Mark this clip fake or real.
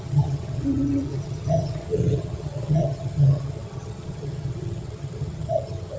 fake